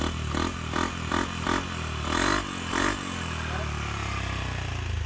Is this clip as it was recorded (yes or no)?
yes